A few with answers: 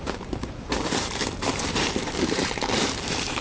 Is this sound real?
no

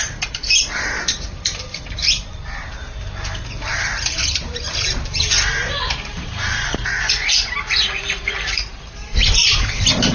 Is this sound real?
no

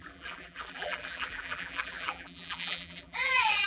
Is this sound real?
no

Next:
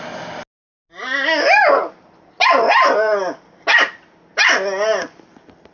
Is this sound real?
yes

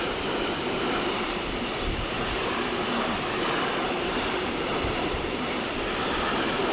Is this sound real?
no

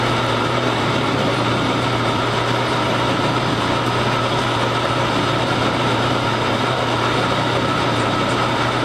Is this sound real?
no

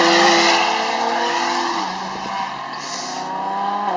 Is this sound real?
yes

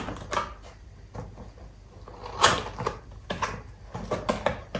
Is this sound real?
yes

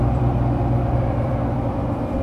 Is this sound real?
no